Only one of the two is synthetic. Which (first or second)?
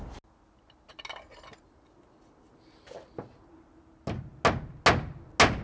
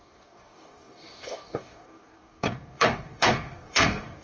second